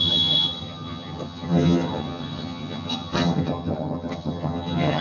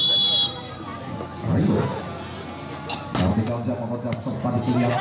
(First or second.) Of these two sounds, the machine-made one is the first